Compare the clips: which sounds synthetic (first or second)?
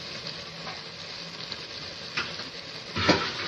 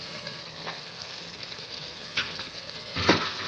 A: second